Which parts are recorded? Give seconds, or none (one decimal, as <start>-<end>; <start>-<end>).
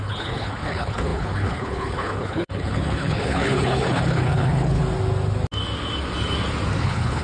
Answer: 4.8-6.8